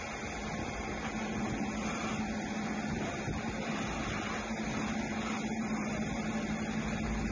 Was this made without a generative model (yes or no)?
yes